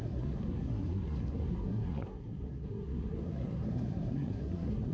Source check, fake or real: fake